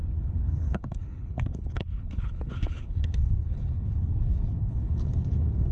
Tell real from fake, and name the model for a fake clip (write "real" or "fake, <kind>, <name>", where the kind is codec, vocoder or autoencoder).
fake, codec, HILCodec